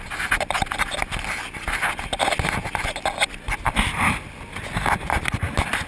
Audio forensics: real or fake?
real